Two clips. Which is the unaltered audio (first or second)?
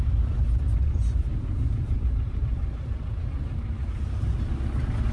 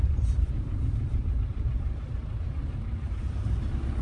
first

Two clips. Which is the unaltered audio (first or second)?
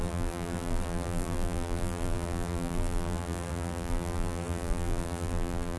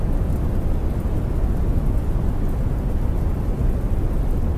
second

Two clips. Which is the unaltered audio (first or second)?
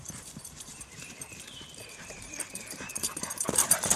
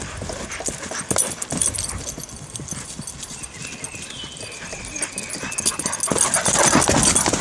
second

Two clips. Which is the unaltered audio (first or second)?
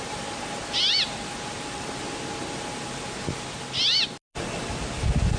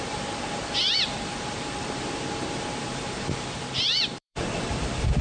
first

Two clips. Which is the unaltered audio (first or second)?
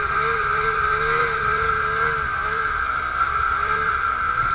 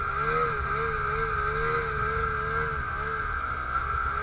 second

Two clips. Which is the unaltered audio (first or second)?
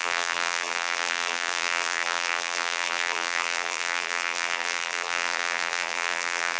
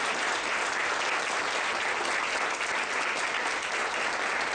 second